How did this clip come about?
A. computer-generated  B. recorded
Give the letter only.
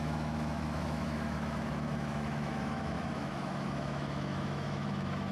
A